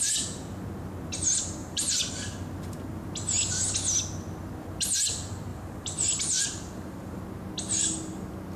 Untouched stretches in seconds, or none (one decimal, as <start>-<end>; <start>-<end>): 0.0-1.6; 2.1-5.5; 7.2-8.6